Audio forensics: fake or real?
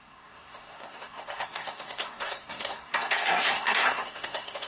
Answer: fake